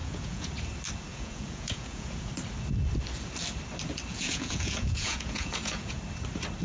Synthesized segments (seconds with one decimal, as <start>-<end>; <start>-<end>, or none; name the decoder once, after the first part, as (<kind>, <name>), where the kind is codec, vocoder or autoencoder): 0.0-0.5 (vocoder, Vocos); 1.1-2.3; 4.1-6.0